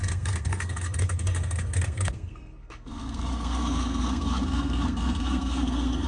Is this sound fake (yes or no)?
yes